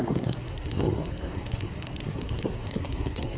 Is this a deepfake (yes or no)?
yes